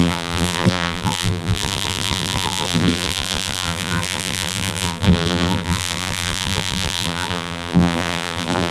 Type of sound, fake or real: fake